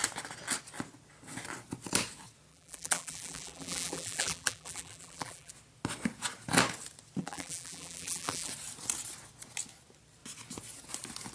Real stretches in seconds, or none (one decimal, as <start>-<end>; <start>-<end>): 0.0-2.5; 5.5-7.2; 8.5-11.3